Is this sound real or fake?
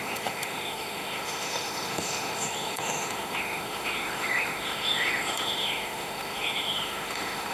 fake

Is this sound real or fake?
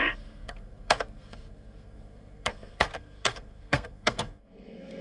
fake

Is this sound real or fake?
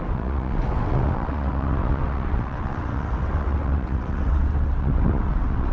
fake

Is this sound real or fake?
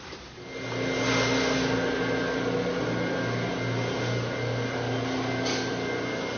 real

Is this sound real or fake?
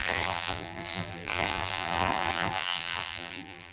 fake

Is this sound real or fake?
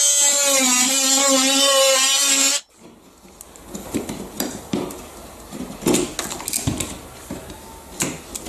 real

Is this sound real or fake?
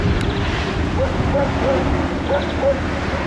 real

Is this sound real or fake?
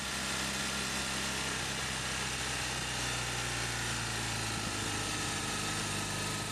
real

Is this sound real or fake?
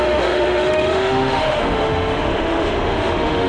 fake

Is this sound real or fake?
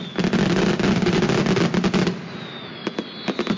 real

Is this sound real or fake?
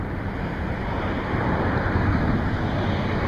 real